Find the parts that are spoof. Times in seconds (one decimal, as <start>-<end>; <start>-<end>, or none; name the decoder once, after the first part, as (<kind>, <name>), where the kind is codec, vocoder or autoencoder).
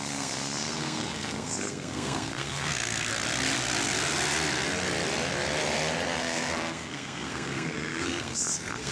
0.0-3.1 (codec, SNAC); 6.2-8.9